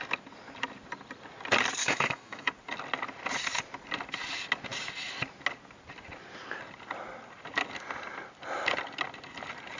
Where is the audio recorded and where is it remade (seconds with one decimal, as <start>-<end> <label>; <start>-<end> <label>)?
0.0-1.8 recorded; 1.8-2.5 remade; 2.5-9.8 recorded